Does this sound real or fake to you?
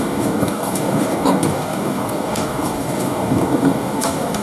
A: fake